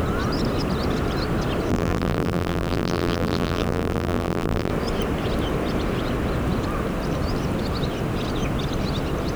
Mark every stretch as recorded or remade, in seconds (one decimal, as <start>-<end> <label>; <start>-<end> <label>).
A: 0.0-1.7 recorded; 1.7-4.7 remade; 4.7-9.4 recorded